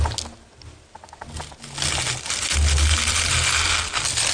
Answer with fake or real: real